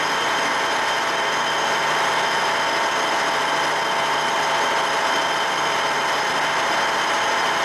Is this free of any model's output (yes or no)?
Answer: yes